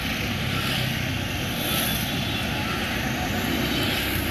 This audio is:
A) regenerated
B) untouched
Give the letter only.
B